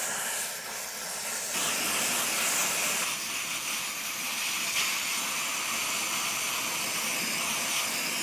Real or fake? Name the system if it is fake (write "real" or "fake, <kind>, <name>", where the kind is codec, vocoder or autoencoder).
real